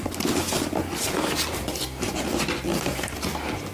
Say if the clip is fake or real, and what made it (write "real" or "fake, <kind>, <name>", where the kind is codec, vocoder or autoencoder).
real